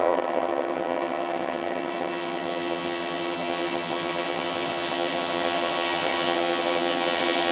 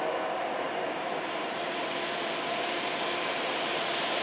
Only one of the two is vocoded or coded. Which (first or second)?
first